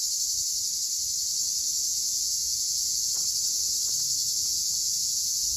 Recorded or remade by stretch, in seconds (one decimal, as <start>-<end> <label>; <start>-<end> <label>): 0.0-1.9 recorded; 1.9-3.1 remade; 3.1-4.2 recorded; 4.2-5.6 remade